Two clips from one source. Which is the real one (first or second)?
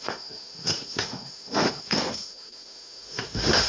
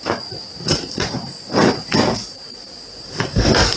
second